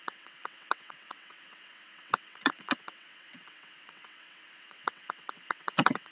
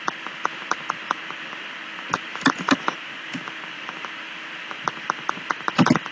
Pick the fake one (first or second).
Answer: first